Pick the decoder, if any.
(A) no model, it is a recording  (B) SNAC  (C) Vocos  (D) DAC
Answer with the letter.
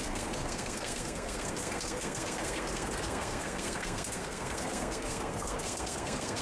B